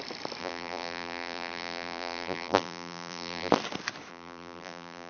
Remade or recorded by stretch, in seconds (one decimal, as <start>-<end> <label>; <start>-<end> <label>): 0.0-0.4 recorded; 0.4-3.5 remade; 3.5-4.1 recorded; 4.1-5.1 remade